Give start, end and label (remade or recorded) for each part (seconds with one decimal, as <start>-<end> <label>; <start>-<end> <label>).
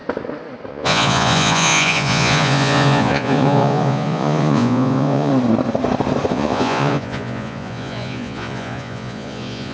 0.0-0.7 recorded; 0.7-5.3 remade; 5.3-6.3 recorded; 6.3-9.7 remade